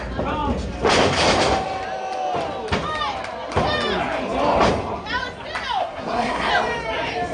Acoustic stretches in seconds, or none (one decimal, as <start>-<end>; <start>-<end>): 0.0-5.8; 6.5-7.3